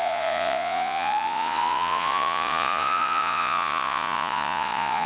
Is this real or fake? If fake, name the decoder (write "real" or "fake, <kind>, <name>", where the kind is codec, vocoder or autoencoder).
fake, vocoder, Vocos